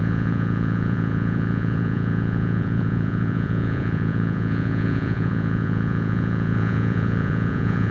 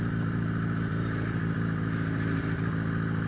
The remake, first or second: first